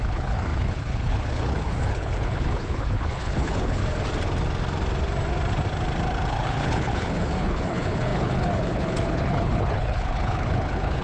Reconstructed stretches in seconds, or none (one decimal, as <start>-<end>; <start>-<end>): 0.0-3.8; 6.3-11.0